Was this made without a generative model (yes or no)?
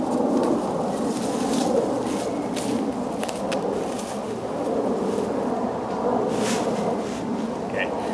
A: yes